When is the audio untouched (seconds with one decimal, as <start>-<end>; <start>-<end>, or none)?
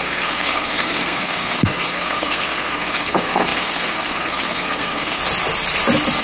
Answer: 5.2-6.2